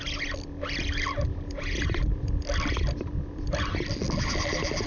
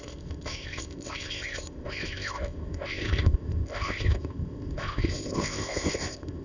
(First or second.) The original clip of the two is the first